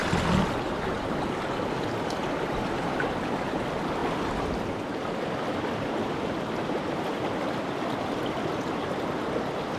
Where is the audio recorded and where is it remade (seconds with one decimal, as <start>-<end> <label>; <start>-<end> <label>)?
0.0-9.8 recorded